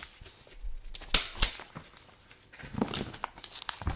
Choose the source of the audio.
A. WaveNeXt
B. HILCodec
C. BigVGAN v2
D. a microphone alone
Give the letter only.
D